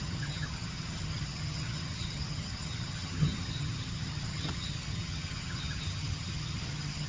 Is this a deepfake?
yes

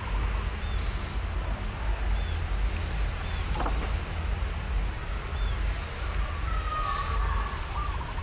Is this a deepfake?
no